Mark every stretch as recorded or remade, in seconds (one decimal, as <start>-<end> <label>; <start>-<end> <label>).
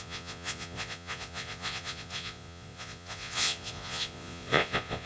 0.0-5.1 remade